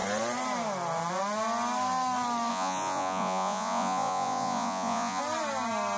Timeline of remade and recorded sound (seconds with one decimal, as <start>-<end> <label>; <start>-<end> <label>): 0.0-2.5 recorded; 2.5-5.2 remade; 5.2-6.0 recorded